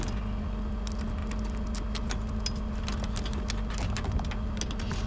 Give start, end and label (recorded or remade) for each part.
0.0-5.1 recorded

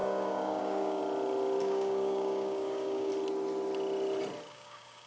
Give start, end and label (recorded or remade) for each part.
0.0-1.0 remade; 1.0-1.6 recorded; 1.6-3.1 remade; 3.1-4.5 recorded; 4.5-5.1 remade

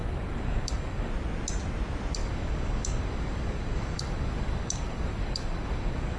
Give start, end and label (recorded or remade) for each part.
0.0-1.1 remade; 1.1-2.2 recorded; 2.2-6.2 remade